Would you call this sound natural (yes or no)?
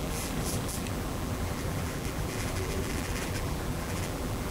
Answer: no